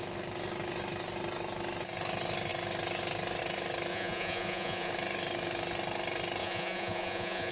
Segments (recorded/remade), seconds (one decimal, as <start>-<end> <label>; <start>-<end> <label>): 0.0-3.9 recorded; 3.9-4.9 remade; 4.9-6.4 recorded; 6.4-7.5 remade